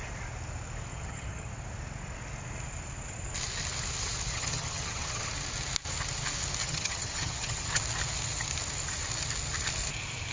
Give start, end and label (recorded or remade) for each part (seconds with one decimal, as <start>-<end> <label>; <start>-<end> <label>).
0.0-0.9 recorded; 0.9-1.5 remade; 1.5-4.3 recorded; 4.3-5.3 remade; 5.3-6.6 recorded; 6.6-7.8 remade; 7.8-10.3 recorded